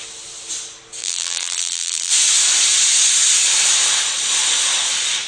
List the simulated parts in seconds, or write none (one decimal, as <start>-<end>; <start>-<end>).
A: 1.0-2.1